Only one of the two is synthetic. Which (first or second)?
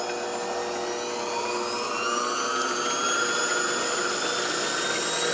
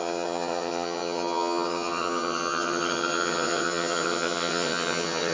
second